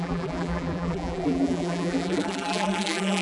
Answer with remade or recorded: remade